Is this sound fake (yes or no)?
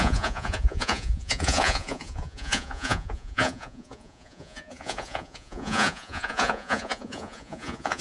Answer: yes